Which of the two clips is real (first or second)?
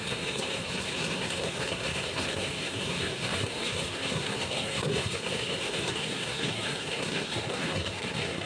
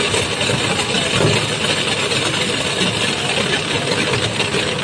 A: second